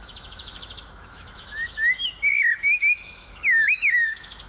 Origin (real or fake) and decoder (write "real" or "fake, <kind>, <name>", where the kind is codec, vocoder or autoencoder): fake, autoencoder, DAC-VAE